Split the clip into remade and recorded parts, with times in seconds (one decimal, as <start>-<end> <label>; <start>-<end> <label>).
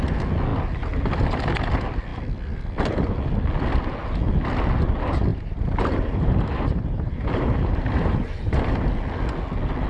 0.0-5.3 recorded; 5.3-8.7 remade; 8.7-9.9 recorded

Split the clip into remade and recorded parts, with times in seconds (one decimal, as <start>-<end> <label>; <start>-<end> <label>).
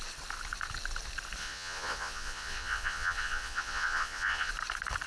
0.0-1.4 recorded; 1.4-4.5 remade; 4.5-5.1 recorded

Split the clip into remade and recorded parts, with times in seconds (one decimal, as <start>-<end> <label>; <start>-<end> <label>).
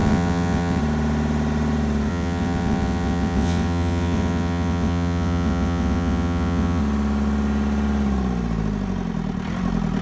0.0-0.8 remade; 0.8-2.1 recorded; 2.1-6.8 remade; 6.8-10.0 recorded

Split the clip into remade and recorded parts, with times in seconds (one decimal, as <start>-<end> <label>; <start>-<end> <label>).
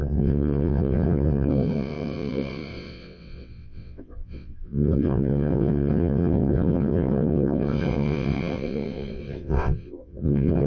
0.0-10.7 remade